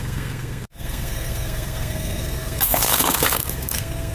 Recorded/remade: remade